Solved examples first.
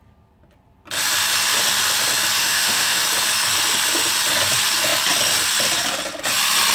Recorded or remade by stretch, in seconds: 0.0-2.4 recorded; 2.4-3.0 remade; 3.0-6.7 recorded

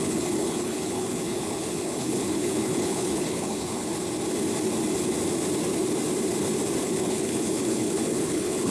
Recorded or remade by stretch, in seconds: 0.0-3.9 remade; 3.9-6.8 recorded; 6.8-8.7 remade

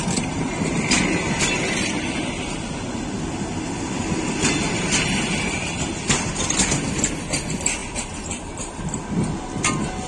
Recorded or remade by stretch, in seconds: 0.0-10.1 recorded

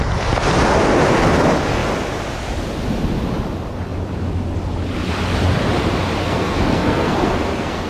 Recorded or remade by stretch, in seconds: 0.0-6.2 recorded; 6.2-7.9 remade